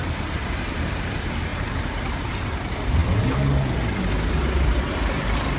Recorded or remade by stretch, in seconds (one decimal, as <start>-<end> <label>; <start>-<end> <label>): 0.0-3.0 remade; 3.0-4.3 recorded; 4.3-5.6 remade